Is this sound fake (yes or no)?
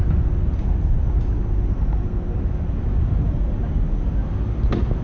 no